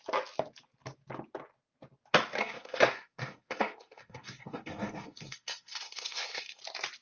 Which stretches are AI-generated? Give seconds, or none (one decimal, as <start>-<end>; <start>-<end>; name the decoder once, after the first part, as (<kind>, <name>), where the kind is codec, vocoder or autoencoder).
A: 2.4-6.6 (codec, SNAC)

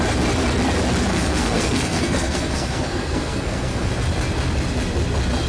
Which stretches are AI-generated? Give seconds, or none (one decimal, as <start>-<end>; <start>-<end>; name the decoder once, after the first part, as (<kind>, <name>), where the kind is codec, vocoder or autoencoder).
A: 1.1-3.9 (codec, SNAC)

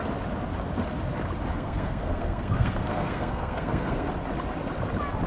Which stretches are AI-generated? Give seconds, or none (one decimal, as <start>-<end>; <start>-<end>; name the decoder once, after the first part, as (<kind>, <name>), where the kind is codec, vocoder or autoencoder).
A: 1.5-4.1 (codec, SNAC)

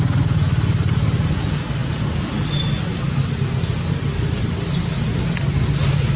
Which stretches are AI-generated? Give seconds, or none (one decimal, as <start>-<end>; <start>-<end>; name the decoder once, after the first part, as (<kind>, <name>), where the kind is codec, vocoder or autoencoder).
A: none

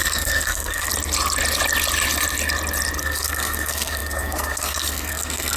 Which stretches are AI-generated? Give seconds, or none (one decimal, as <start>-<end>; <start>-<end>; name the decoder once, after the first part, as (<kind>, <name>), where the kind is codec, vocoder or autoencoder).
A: 0.0-0.9 (codec, SNAC); 3.0-5.6

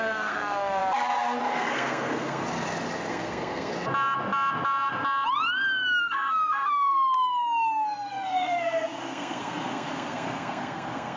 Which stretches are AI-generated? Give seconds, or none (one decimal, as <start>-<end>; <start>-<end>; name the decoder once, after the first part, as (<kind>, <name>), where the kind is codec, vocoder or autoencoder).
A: 0.0-0.8 (codec, SNAC); 1.4-2.4; 3.1-3.7; 6.0-11.2

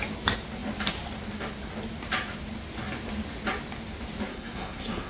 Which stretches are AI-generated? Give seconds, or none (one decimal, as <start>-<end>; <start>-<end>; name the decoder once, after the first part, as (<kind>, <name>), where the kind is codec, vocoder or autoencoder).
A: 4.3-5.1 (codec, SNAC)

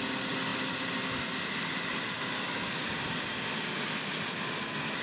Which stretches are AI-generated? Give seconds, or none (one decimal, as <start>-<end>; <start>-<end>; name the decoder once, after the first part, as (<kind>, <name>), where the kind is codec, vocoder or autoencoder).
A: none